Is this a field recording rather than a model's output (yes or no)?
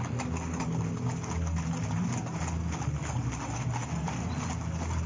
yes